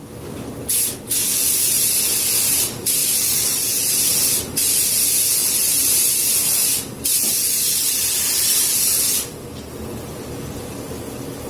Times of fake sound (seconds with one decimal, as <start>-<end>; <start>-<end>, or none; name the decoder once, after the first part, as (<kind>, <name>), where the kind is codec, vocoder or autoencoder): none